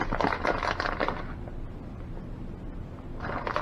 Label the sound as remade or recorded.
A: recorded